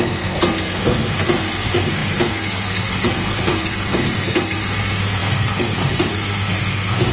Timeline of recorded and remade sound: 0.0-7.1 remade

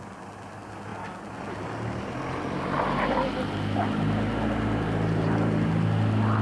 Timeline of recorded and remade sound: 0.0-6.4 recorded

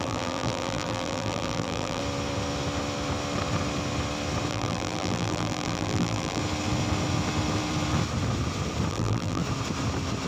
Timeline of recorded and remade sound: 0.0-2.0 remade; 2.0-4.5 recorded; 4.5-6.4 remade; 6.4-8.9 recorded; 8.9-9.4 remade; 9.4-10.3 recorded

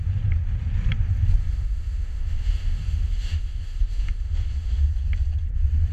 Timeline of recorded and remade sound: 0.0-1.4 recorded; 1.4-4.9 remade; 4.9-5.9 recorded

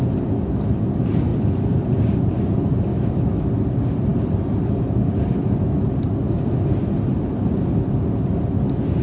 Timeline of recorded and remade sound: 0.0-2.9 recorded; 2.9-3.5 remade; 3.5-9.0 recorded